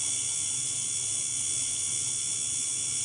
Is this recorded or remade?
recorded